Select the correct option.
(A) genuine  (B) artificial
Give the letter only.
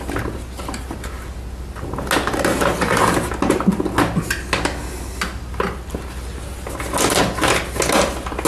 A